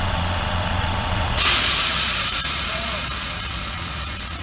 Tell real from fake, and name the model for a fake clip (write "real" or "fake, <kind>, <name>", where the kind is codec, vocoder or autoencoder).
fake, vocoder, Vocos